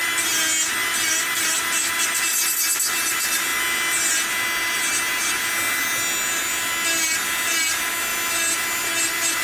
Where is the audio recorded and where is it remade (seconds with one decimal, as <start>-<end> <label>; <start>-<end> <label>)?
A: 0.0-9.4 recorded